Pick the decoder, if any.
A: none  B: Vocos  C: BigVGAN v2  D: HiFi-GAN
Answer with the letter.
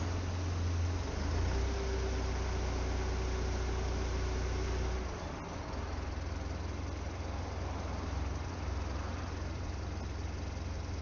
A